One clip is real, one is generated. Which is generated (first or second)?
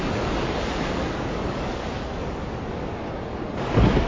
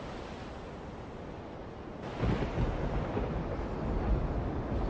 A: first